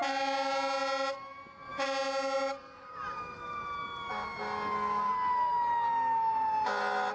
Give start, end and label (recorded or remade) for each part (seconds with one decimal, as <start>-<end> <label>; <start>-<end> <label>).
0.0-7.1 recorded